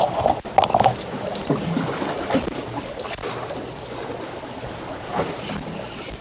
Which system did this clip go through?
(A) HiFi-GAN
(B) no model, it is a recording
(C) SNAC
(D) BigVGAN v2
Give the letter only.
B